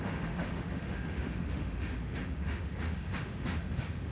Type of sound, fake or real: fake